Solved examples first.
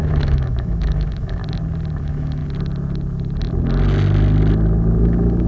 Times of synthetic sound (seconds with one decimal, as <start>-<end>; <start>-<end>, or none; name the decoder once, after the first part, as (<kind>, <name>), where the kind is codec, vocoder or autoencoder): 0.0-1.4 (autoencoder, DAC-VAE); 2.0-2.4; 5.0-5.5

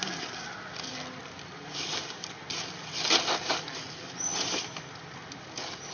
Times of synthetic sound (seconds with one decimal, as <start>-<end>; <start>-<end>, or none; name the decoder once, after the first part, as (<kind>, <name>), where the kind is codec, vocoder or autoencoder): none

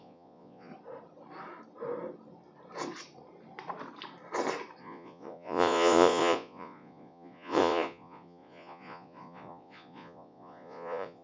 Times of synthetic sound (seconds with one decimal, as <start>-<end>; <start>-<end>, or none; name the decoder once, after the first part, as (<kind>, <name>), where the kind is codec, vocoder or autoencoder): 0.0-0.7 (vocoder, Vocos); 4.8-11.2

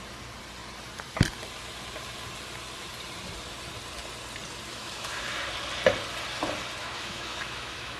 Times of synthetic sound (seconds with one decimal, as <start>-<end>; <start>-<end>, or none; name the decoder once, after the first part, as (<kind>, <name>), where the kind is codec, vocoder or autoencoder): 4.7-5.3 (autoencoder, DAC-VAE); 6.8-8.0